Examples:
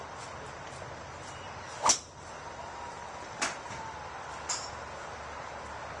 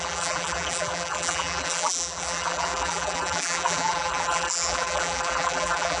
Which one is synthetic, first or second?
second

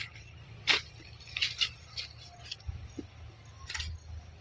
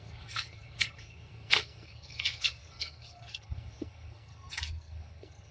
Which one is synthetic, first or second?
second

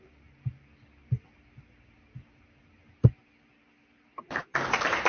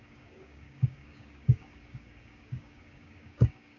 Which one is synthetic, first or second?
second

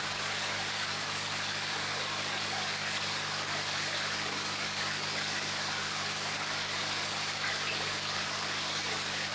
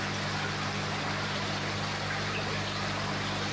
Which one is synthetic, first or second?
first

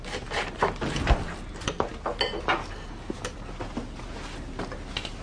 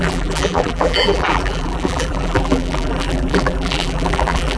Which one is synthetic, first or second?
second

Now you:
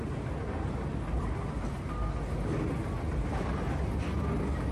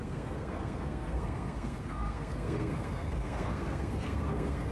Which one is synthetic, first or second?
second